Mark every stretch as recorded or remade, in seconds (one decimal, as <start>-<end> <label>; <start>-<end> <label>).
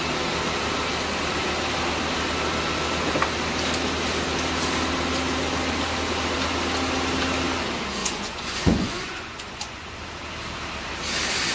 0.0-8.0 recorded; 8.0-10.0 remade; 10.0-11.5 recorded